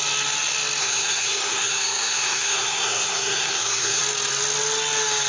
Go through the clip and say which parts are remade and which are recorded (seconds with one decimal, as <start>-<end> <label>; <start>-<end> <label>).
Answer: 0.0-0.8 recorded; 0.8-4.0 remade; 4.0-5.3 recorded